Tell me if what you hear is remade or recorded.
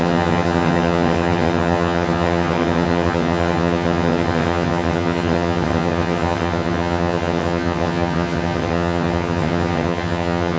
remade